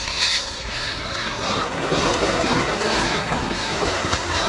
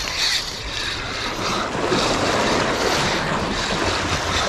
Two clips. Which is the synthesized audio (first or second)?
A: first